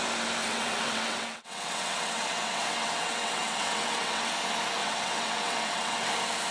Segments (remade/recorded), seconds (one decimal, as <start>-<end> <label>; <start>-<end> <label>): 0.0-0.4 recorded; 0.4-4.3 remade; 4.3-4.8 recorded; 4.8-6.1 remade; 6.1-6.5 recorded